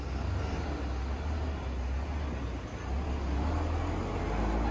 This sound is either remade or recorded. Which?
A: recorded